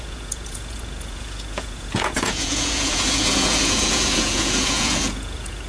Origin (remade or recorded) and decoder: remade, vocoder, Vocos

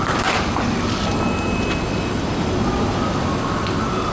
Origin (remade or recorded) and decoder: recorded